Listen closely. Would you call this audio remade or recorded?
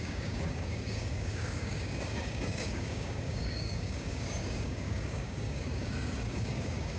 remade